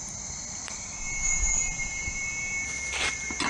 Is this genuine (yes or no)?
no